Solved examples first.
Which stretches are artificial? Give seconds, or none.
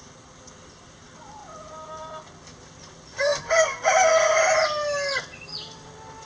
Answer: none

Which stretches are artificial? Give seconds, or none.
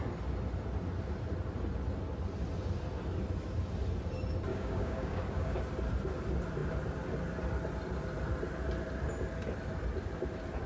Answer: 4.5-5.6 (codec, DAC)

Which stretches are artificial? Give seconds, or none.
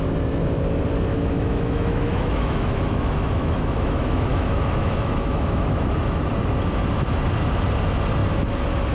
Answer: 1.1-6.3 (autoencoder, DAC-VAE)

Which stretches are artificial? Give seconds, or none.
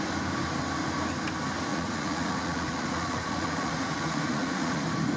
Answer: 1.7-4.8 (vocoder, Vocos)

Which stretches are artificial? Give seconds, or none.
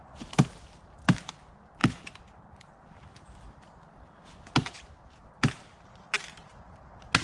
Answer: none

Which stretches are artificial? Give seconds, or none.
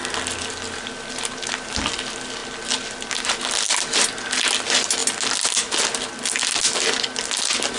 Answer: none